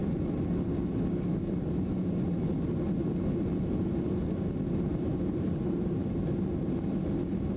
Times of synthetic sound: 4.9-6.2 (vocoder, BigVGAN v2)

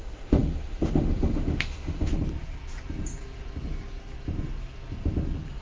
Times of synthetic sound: 0.0-2.1 (autoencoder, DAC-VAE)

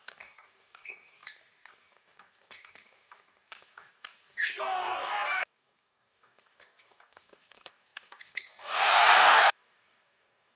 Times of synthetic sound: 0.0-10.6 (codec, DAC)